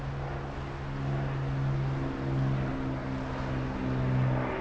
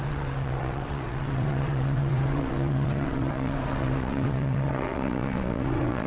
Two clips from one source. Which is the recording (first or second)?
first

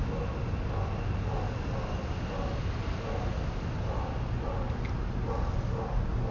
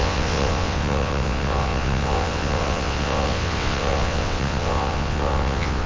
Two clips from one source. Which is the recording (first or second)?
first